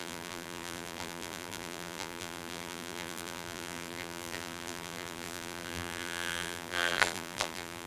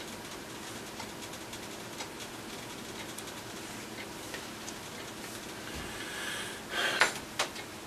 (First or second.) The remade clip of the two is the first